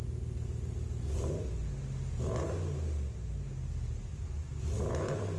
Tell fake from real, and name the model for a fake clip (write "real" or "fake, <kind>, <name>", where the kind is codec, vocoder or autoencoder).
real